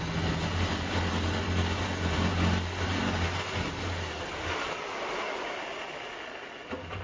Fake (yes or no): no